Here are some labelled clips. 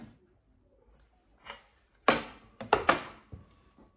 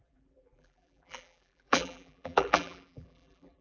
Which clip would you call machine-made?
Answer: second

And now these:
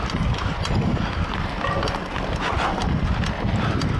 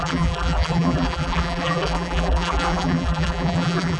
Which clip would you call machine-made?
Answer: second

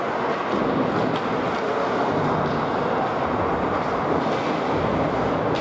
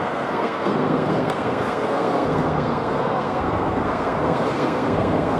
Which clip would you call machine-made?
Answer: second